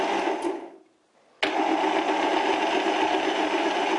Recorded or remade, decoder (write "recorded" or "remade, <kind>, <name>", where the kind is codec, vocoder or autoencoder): recorded